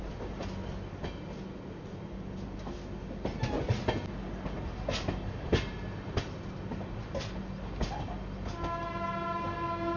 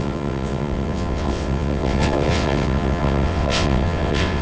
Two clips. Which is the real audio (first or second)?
first